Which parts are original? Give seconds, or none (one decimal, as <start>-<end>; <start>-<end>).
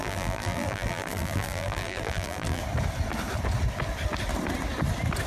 2.6-5.3